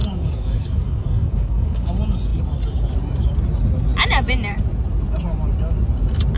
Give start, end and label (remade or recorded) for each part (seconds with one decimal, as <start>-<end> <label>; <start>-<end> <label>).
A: 0.0-1.9 remade; 1.9-6.4 recorded